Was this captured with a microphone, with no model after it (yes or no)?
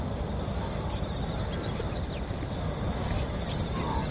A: yes